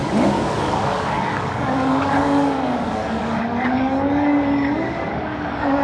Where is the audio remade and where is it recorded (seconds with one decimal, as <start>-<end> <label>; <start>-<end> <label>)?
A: 0.0-5.8 remade